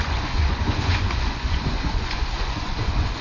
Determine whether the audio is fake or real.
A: fake